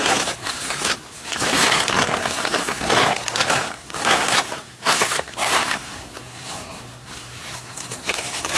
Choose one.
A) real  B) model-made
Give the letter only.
B